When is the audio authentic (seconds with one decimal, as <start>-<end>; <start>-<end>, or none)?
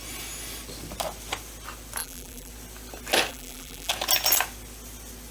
0.0-2.0; 2.5-3.3; 3.9-5.3